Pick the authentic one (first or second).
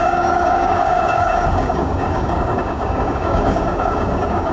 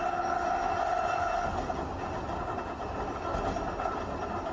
second